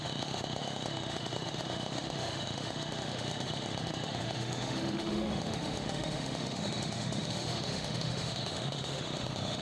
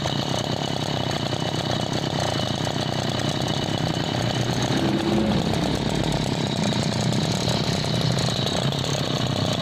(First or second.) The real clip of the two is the second